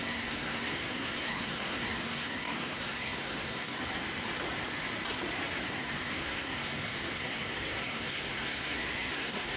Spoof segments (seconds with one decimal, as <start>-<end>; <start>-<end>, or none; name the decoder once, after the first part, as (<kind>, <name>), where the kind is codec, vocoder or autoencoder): 0.0-3.8 (codec, SNAC); 5.7-9.6